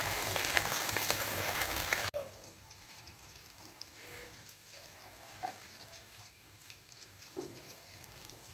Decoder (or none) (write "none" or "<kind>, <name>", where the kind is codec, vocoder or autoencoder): codec, DAC